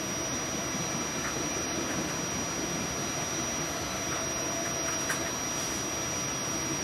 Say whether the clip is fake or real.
real